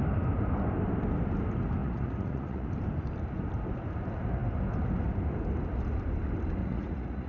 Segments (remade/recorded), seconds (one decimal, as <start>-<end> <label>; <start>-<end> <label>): 0.0-1.8 recorded; 1.8-2.7 remade; 2.7-6.6 recorded; 6.6-7.3 remade